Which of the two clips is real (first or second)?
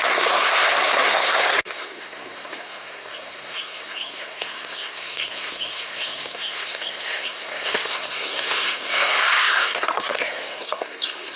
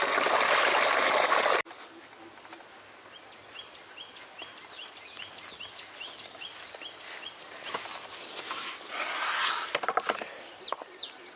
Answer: second